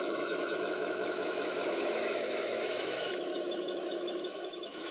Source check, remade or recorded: remade